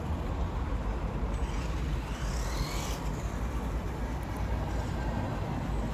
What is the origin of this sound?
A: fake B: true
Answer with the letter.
B